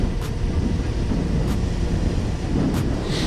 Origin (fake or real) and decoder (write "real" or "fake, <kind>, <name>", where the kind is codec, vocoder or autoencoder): fake, vocoder, BigVGAN v2